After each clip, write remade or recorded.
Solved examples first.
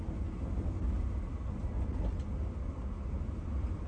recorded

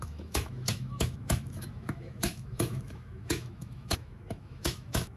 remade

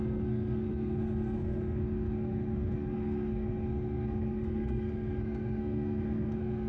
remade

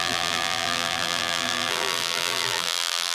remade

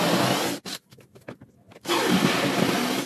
recorded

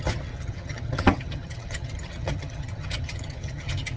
remade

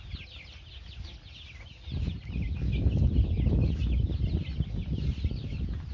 recorded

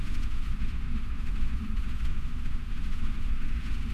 remade